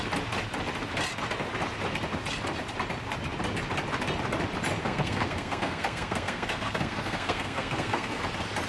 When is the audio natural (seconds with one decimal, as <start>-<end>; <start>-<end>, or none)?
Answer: 0.0-4.8; 8.2-8.7